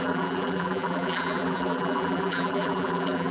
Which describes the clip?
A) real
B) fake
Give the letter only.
B